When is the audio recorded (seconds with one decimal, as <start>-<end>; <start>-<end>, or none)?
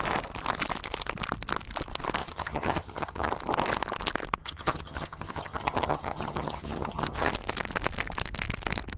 0.0-2.2; 3.3-4.4; 7.3-9.0